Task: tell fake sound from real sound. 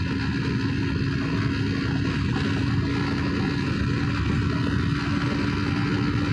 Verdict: real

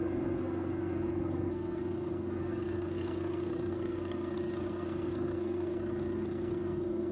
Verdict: fake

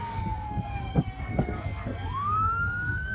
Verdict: fake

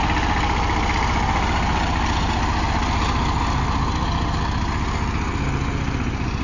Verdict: real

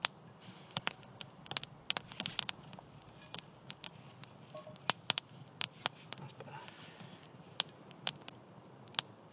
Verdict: real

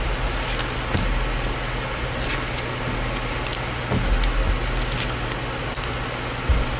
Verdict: real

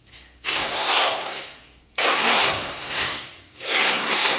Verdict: fake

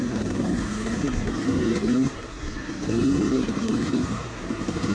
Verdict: fake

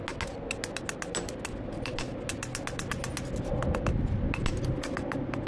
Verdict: real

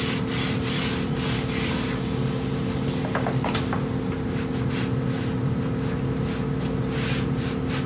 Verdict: real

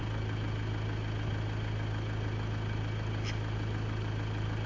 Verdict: real